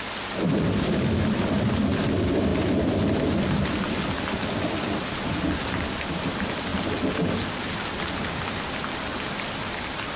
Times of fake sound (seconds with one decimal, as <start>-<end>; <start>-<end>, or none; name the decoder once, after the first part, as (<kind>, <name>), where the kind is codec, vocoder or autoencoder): none